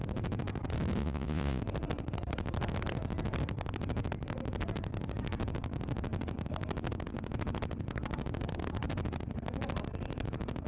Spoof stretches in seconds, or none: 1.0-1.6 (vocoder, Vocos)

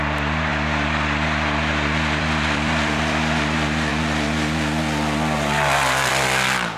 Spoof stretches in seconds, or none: 0.0-0.5 (vocoder, BigVGAN v2); 2.2-3.9; 6.1-6.8